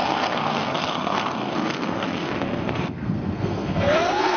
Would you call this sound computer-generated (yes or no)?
yes